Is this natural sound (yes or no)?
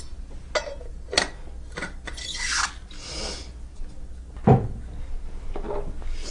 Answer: yes